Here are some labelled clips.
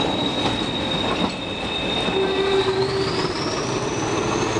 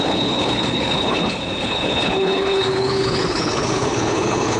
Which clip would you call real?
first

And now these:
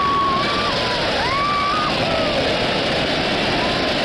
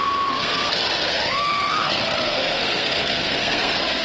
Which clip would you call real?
first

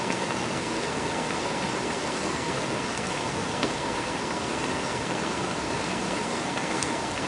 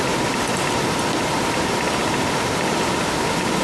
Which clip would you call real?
second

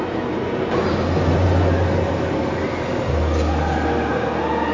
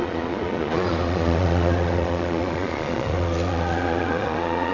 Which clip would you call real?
first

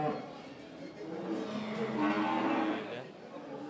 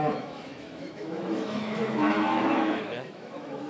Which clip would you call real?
first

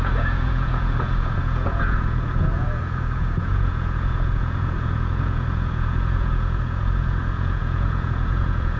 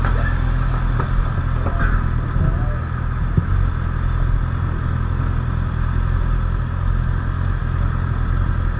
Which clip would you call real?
second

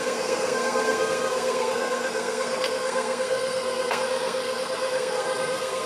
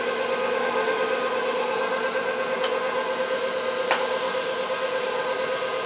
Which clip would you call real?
second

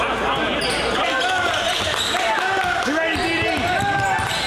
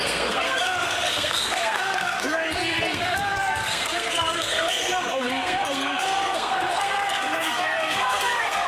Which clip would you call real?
first